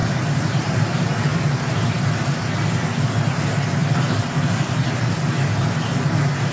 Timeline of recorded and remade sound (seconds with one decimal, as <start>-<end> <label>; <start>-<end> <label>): 0.0-6.5 recorded